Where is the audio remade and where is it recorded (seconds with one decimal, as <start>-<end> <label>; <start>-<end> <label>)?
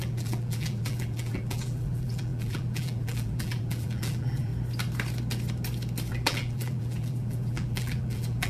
0.0-4.5 remade; 4.5-6.1 recorded; 6.1-8.5 remade